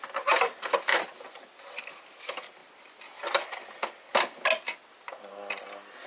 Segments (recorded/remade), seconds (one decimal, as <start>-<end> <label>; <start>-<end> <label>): 0.0-0.9 recorded; 0.9-1.5 remade; 1.5-2.6 recorded; 2.6-3.9 remade; 3.9-6.1 recorded